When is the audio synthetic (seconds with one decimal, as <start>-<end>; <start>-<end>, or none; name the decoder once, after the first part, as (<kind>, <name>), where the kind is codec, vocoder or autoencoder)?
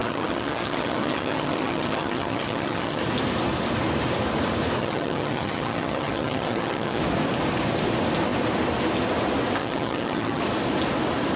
0.0-3.0 (vocoder, HiFi-GAN); 4.8-7.0; 9.6-10.4